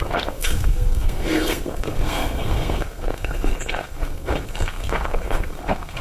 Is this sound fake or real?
fake